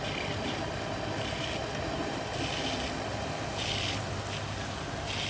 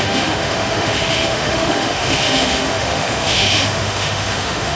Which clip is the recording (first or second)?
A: first